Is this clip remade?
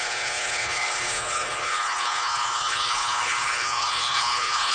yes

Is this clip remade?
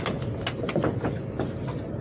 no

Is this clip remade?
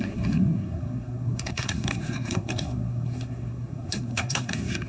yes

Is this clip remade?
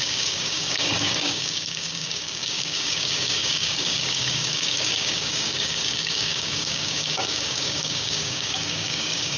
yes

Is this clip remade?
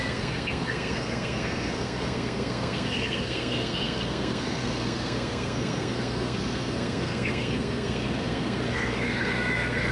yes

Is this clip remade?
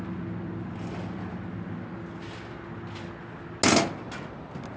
no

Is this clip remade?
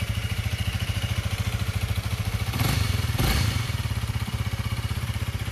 yes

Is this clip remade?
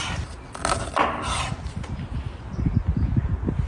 no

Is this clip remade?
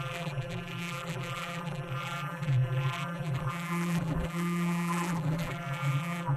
yes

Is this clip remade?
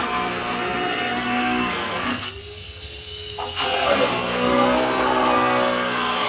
yes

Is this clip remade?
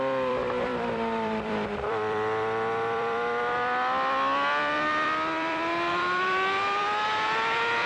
yes